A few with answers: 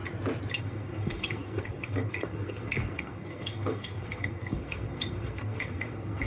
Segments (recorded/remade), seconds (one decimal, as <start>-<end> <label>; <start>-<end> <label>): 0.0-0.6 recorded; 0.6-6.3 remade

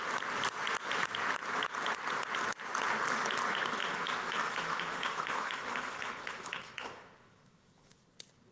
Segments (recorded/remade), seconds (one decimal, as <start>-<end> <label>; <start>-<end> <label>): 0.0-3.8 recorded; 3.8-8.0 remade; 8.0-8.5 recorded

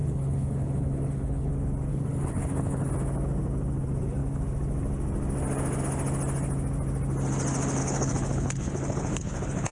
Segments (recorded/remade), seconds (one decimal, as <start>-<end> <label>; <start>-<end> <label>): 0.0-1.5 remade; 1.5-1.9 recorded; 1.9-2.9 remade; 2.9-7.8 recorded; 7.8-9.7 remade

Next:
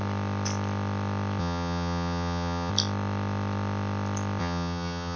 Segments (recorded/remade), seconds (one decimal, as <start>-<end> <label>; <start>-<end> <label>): 0.0-1.4 recorded; 1.4-2.7 remade; 2.7-4.4 recorded; 4.4-5.2 remade

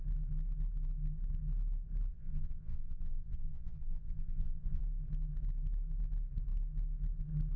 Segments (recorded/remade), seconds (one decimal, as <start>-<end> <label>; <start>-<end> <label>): 0.0-2.1 recorded; 2.1-4.8 remade; 4.8-7.6 recorded

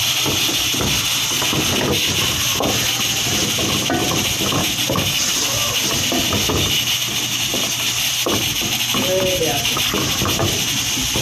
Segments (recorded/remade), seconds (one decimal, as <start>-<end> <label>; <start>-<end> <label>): 0.0-11.2 recorded

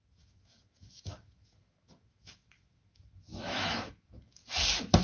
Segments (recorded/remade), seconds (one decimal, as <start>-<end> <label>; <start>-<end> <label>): 0.0-4.4 remade; 4.4-5.0 recorded